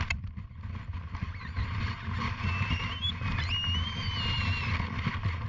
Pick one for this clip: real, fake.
real